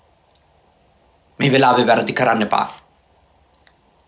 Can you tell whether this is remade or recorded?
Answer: recorded